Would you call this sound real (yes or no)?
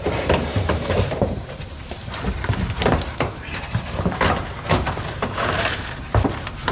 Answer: no